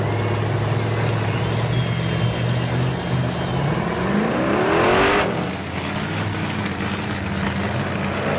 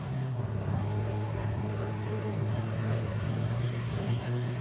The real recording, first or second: first